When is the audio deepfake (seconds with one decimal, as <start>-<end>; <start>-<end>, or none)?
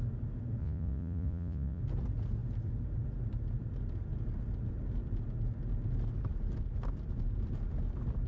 0.6-1.8